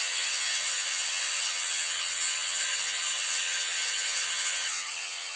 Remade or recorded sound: remade